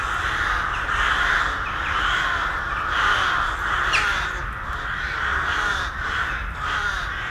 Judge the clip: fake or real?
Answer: fake